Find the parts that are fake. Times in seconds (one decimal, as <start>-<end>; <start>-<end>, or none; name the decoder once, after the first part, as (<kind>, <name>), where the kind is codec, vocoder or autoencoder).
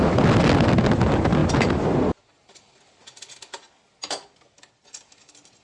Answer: none